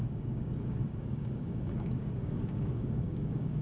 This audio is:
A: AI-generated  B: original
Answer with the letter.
A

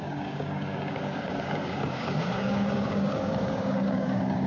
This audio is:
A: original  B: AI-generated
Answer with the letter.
B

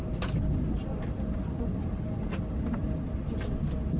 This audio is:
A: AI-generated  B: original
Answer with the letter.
B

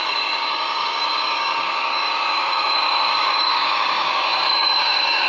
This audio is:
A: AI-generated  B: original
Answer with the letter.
A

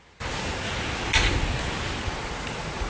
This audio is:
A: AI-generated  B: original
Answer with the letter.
B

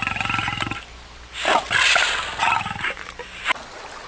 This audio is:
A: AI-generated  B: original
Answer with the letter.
B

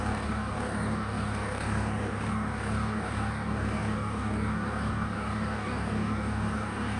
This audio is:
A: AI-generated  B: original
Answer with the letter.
A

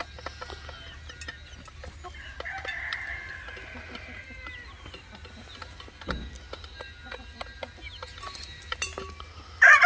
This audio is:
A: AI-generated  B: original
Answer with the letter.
B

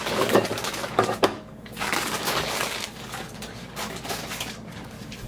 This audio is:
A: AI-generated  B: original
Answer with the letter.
A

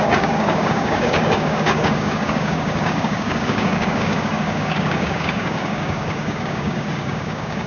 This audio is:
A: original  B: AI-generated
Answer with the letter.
B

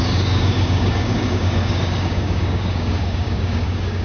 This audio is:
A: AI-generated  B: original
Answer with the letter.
A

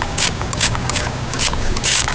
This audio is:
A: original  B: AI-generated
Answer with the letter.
B